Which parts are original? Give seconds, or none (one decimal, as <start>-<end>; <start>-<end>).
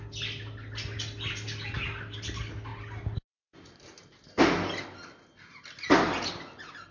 0.0-6.9